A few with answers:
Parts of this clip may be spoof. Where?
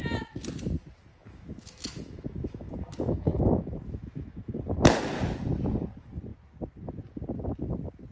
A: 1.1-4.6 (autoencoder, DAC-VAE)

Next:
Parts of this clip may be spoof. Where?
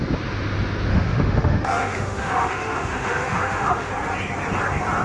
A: 0.9-3.9 (autoencoder, DAC-VAE)